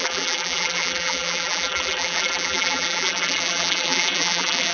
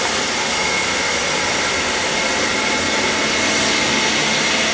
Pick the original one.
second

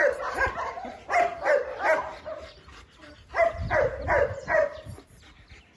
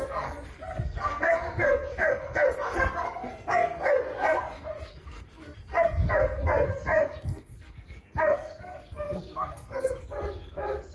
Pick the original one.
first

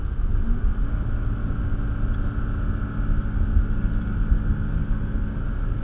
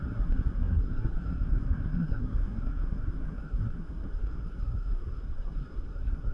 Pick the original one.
first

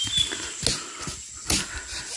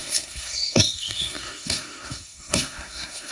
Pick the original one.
first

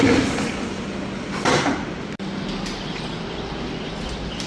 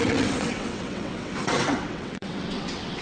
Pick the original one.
first